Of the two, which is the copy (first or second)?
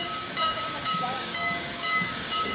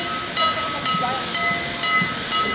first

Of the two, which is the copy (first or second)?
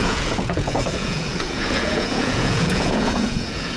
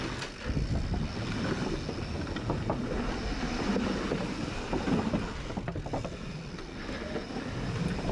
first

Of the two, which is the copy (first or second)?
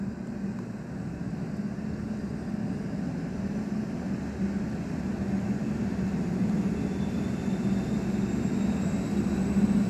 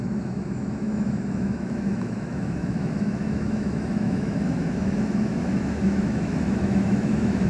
second